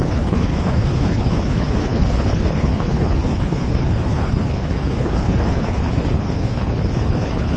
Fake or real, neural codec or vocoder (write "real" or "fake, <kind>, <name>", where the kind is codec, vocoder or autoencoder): fake, codec, HILCodec